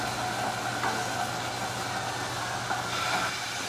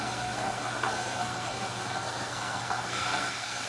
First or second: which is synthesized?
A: second